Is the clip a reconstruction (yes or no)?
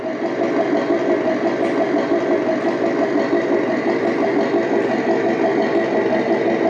no